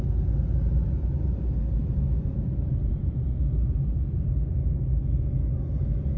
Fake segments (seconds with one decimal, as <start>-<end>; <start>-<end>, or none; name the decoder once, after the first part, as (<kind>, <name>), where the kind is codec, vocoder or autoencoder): 2.9-4.5 (vocoder, BigVGAN v2)